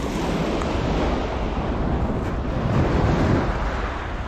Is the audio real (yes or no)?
yes